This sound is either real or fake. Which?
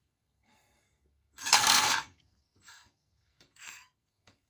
fake